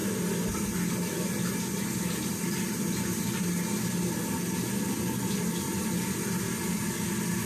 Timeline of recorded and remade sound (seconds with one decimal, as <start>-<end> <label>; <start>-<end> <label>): 0.0-7.5 recorded